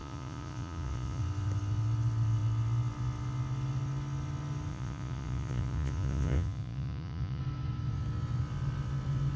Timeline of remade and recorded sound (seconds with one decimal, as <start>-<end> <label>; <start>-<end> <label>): 0.0-1.2 remade; 1.2-4.7 recorded; 4.7-7.4 remade; 7.4-9.4 recorded